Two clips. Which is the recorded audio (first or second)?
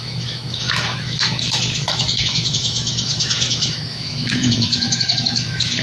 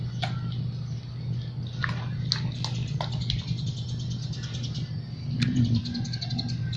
second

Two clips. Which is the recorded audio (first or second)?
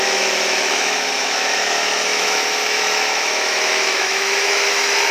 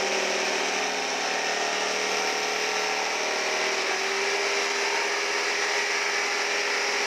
second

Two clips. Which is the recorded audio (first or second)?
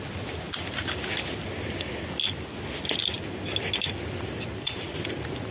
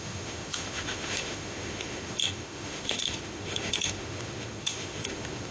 first